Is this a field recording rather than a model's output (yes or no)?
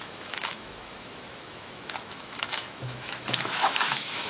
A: no